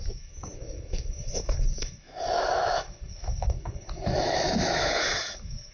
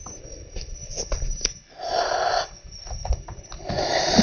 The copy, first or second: first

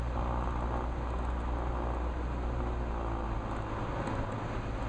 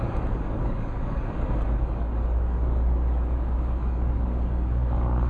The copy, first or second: second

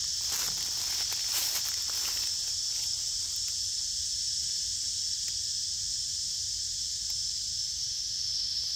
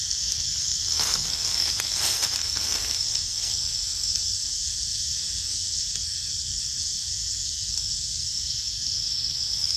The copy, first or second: second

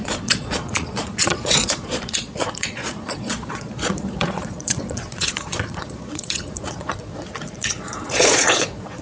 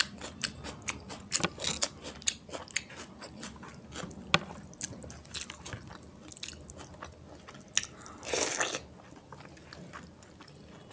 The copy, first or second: first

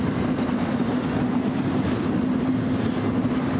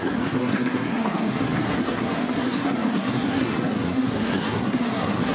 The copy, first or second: second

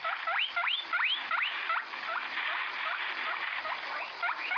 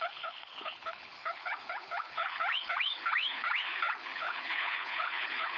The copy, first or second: second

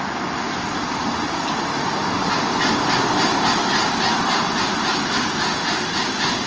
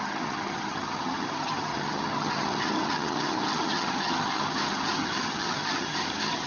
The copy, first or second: second